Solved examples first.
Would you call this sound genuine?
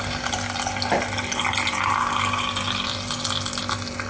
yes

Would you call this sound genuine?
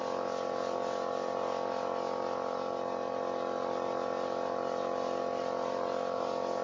yes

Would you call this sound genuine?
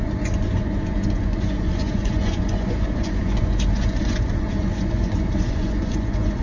no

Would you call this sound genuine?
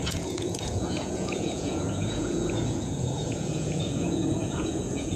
no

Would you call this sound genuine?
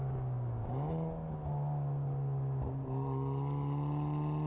yes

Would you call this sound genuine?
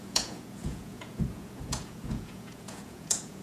no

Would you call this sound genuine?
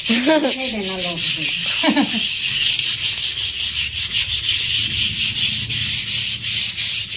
yes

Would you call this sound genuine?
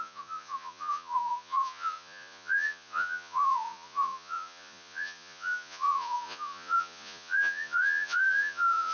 no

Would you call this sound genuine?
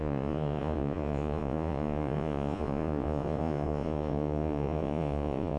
no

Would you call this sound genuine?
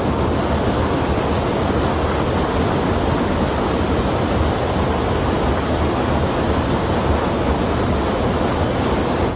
yes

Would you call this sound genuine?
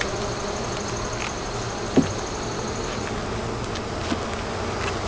yes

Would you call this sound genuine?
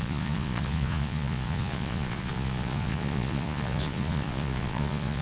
no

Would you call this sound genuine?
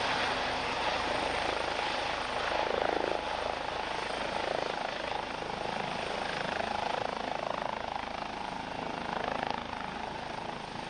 yes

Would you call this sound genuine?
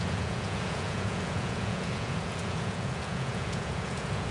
no